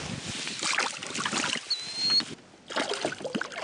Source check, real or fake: real